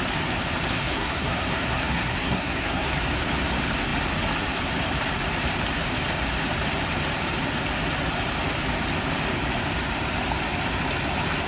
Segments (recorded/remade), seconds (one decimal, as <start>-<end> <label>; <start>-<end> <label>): 0.0-0.7 recorded; 0.7-2.9 remade; 2.9-11.5 recorded